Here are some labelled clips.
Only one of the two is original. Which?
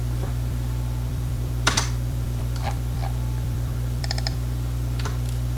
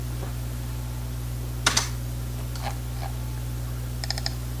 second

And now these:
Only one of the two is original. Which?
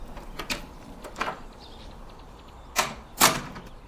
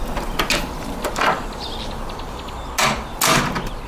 second